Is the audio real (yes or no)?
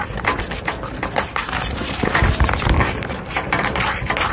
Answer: no